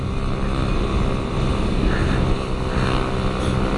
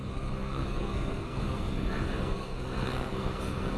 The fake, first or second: second